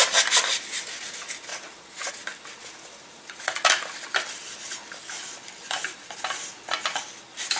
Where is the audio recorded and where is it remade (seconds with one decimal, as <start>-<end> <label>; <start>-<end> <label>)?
0.0-1.5 recorded; 1.5-2.1 remade; 2.1-2.6 recorded; 2.6-3.7 remade; 3.7-7.6 recorded